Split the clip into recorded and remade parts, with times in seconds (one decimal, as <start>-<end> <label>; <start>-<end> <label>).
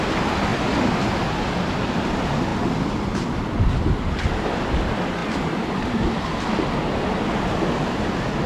0.0-8.5 recorded